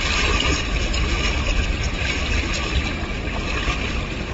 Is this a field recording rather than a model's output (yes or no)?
yes